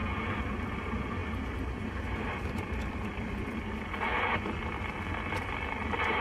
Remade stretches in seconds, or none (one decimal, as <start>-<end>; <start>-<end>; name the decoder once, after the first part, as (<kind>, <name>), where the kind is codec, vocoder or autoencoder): 1.2-3.0 (vocoder, BigVGAN v2)